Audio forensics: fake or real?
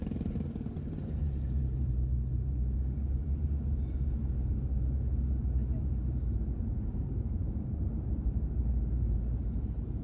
fake